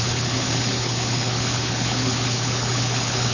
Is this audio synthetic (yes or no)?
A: yes